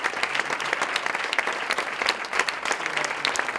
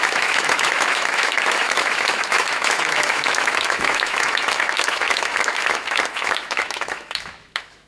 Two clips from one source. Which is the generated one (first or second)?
second